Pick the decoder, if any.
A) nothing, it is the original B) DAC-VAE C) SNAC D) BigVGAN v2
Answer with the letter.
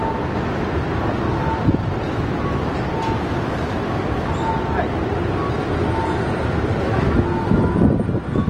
A